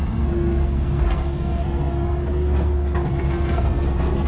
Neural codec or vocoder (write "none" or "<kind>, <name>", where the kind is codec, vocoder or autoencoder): codec, SNAC